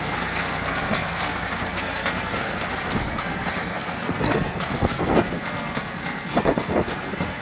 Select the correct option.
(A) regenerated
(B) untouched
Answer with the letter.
A